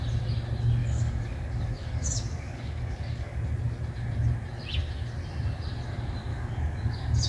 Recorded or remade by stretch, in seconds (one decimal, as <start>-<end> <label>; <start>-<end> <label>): 0.0-0.8 recorded; 0.8-3.4 remade; 3.4-6.3 recorded; 6.3-7.3 remade